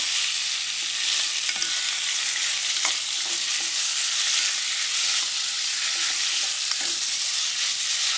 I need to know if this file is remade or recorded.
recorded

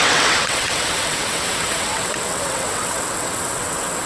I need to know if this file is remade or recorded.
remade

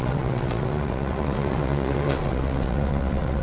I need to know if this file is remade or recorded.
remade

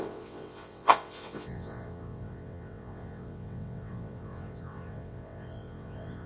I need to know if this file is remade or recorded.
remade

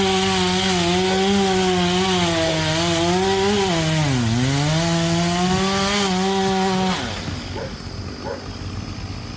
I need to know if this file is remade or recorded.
recorded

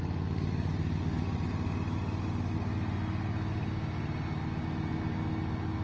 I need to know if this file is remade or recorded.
recorded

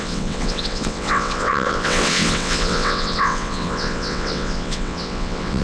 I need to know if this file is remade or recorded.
remade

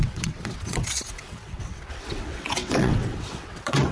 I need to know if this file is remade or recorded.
remade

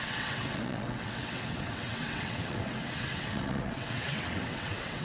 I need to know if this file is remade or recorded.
remade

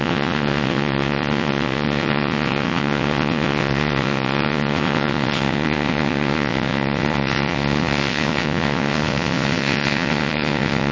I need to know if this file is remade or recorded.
remade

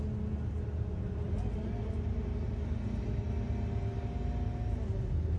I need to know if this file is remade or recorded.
recorded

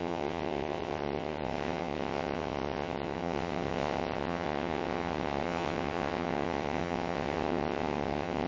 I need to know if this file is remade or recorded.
remade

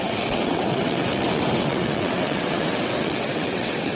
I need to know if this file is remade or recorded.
remade